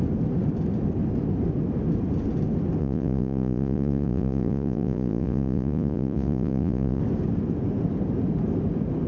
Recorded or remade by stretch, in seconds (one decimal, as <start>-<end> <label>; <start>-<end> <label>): 0.0-2.8 recorded; 2.8-7.0 remade; 7.0-9.1 recorded